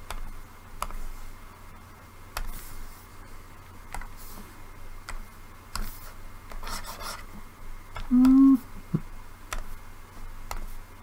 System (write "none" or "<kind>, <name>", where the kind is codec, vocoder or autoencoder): none